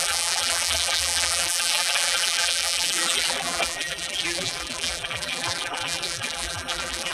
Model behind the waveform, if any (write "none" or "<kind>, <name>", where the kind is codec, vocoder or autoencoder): vocoder, BigVGAN v2